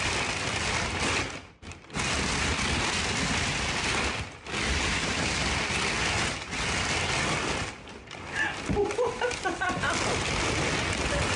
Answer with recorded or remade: recorded